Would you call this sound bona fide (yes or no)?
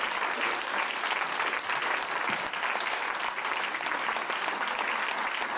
yes